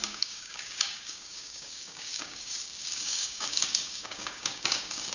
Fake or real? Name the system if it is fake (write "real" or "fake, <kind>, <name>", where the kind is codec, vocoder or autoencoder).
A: fake, codec, DAC